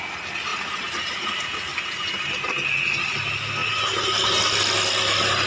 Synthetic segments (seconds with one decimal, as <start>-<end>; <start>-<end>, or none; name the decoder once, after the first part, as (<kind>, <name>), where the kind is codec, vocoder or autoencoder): 0.5-1.2 (vocoder, BigVGAN v2); 1.7-2.2